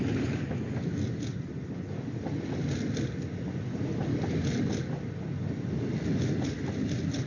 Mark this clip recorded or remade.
recorded